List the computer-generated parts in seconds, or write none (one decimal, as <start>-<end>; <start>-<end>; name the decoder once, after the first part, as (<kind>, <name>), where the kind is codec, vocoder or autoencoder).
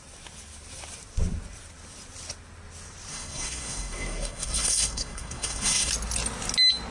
3.1-5.9 (codec, SNAC)